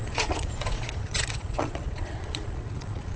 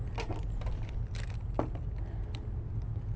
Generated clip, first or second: first